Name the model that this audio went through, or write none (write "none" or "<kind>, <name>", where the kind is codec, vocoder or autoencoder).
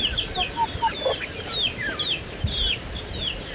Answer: none